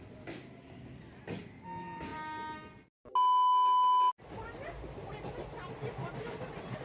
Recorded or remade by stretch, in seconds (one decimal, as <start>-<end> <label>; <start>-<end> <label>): 0.0-6.8 recorded